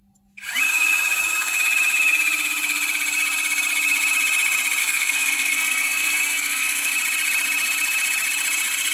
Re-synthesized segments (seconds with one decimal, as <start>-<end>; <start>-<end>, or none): 4.8-6.9